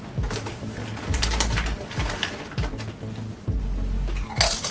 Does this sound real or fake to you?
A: real